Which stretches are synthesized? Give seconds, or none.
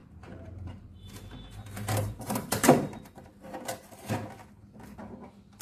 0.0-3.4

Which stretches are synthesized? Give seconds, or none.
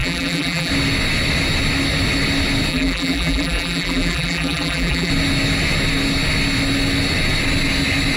0.0-0.7; 2.7-5.1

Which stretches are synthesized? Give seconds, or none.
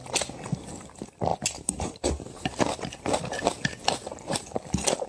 1.3-3.2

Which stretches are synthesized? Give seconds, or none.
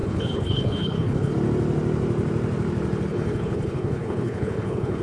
0.0-1.3; 3.1-5.0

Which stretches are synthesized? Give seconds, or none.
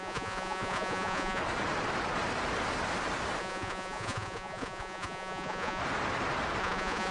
0.0-1.4; 3.4-5.8; 6.6-7.1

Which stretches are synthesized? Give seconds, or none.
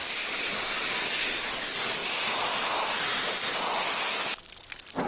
none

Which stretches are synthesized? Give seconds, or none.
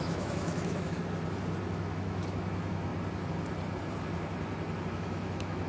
0.0-1.0; 1.7-2.9; 4.9-5.7